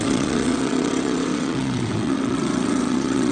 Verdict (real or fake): fake